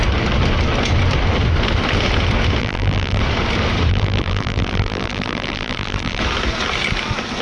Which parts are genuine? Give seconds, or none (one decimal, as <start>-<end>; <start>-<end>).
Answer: 0.0-2.6; 3.2-3.9; 6.2-7.4